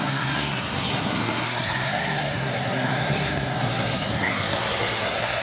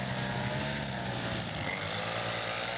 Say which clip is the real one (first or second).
second